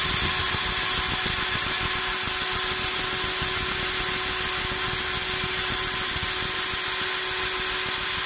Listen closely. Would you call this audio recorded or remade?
recorded